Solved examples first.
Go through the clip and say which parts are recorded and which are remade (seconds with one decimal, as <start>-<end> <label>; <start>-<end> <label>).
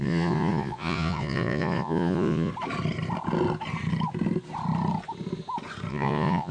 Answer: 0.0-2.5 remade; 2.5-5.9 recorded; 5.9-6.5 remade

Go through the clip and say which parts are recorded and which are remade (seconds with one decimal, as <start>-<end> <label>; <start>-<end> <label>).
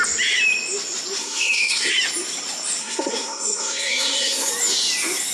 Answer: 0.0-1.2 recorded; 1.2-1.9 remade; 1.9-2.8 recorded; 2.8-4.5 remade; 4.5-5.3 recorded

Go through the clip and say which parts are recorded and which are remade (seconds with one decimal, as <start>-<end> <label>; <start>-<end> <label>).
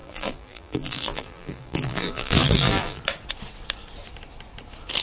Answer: 0.0-3.0 remade; 3.0-5.0 recorded